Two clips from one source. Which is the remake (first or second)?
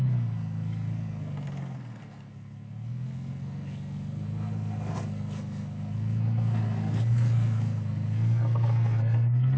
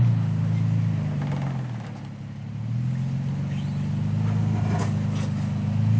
first